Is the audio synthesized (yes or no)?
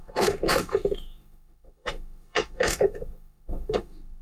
yes